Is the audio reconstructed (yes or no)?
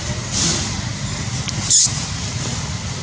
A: no